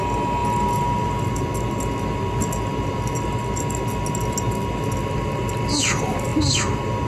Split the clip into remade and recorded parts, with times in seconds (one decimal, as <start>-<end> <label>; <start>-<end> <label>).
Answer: 0.0-7.1 recorded